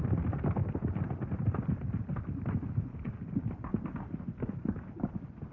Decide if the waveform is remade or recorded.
recorded